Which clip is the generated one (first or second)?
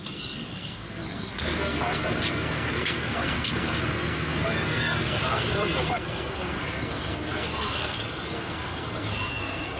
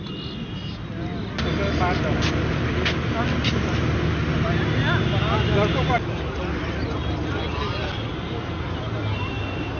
first